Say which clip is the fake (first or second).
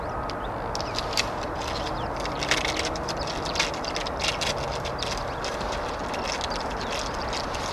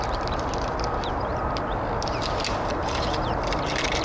second